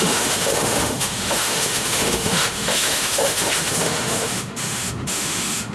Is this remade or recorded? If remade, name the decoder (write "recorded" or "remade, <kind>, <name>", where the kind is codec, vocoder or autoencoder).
remade, autoencoder, DAC-VAE